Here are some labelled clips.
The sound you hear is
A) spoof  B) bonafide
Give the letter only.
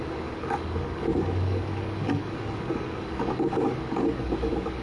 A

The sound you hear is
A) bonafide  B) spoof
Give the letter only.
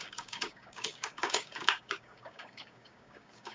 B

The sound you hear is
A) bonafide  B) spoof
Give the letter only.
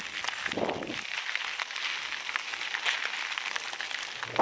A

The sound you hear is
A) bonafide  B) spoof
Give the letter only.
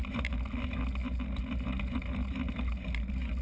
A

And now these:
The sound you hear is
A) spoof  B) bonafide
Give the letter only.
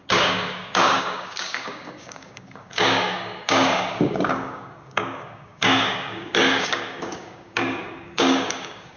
A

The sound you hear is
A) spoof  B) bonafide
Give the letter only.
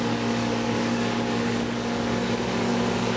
A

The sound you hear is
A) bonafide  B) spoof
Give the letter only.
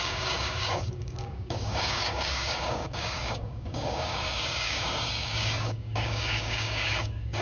B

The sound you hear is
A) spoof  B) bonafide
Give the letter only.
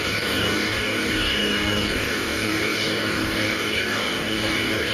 A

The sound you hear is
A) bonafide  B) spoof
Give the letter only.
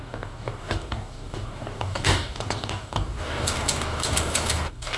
B